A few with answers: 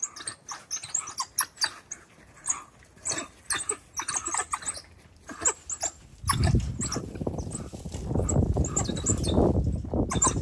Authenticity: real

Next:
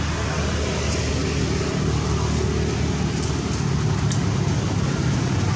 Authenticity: real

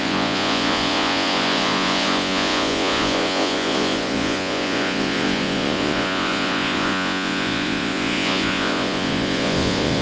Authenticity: fake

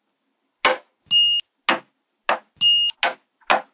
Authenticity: real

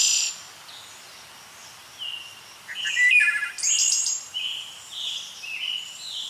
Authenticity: real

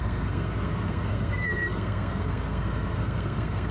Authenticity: fake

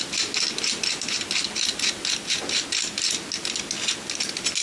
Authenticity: real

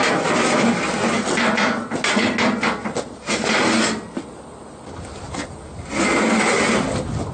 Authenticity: real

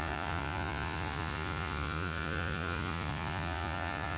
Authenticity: fake